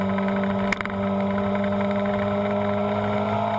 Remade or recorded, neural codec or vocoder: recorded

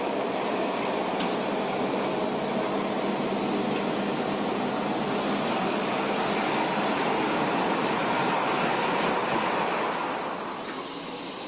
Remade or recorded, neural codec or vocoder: recorded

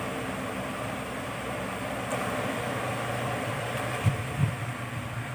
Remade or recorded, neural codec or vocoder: remade, vocoder, BigVGAN v2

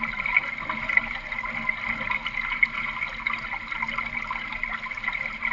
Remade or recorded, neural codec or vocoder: recorded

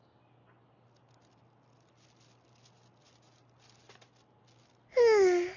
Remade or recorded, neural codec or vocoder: recorded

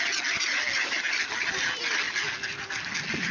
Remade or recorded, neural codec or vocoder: recorded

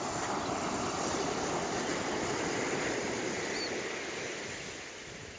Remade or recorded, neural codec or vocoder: recorded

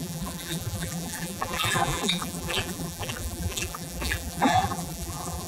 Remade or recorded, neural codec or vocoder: remade, vocoder, BigVGAN v2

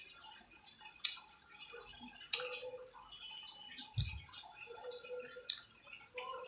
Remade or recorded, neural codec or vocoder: recorded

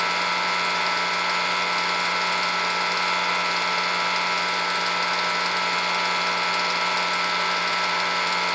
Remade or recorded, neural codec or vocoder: recorded